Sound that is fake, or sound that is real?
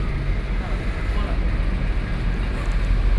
real